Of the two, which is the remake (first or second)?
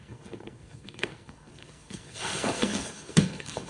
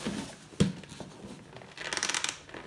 first